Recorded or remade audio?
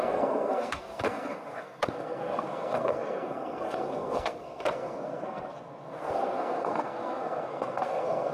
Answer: remade